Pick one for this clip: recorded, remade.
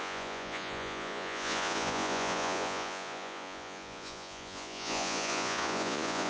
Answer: remade